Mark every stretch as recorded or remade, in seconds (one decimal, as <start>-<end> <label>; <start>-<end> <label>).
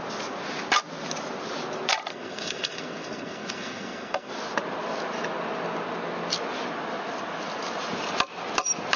0.0-2.1 recorded; 2.1-4.3 remade; 4.3-9.0 recorded